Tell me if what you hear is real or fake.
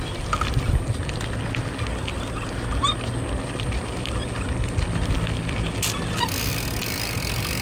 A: real